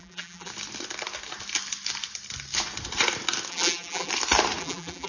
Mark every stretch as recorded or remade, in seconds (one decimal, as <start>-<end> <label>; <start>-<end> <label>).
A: 0.0-0.5 remade; 0.5-3.5 recorded; 3.5-4.1 remade; 4.1-4.6 recorded; 4.6-5.1 remade